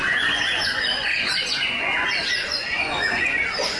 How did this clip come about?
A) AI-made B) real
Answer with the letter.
A